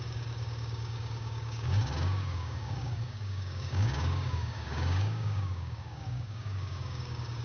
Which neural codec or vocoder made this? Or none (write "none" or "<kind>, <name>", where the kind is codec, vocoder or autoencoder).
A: codec, DAC